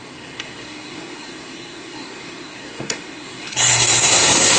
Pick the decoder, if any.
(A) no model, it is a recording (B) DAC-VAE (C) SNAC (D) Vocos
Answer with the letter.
C